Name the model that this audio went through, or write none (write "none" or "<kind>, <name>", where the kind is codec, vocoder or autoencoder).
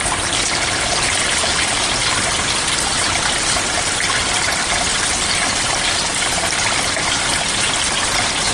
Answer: none